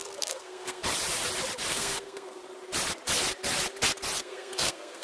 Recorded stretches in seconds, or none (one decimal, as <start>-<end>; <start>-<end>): 0.8-1.7; 2.4-4.2